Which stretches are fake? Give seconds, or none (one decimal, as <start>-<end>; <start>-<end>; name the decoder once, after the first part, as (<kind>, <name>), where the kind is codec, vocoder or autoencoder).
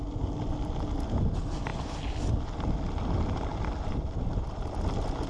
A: none